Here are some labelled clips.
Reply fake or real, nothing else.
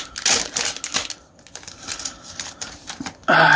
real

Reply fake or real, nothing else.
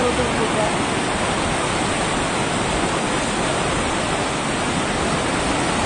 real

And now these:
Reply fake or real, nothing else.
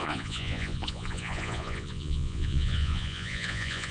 fake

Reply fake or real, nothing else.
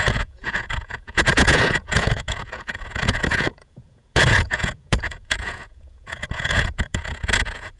fake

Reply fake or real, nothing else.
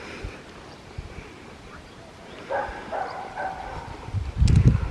real